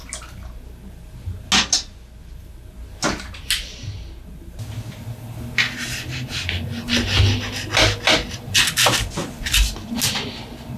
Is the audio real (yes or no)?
yes